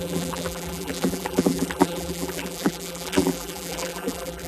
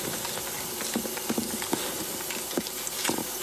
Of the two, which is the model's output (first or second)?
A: first